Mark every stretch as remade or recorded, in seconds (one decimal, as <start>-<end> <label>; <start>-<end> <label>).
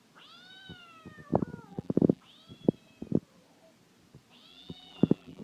0.0-1.7 recorded; 1.7-2.2 remade; 2.2-4.5 recorded; 4.5-5.4 remade